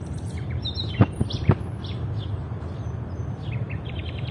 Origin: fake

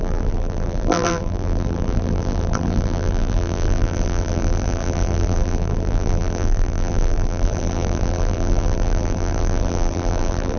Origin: fake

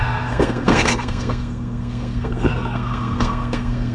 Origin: fake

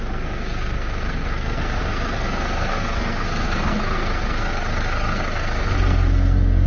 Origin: fake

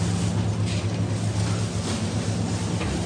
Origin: real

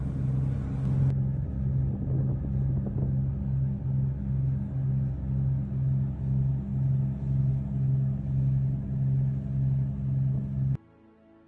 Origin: real